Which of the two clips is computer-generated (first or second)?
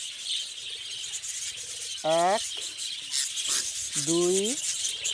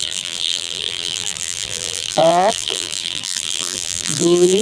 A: second